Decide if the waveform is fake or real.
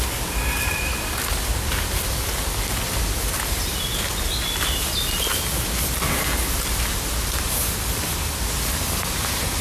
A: real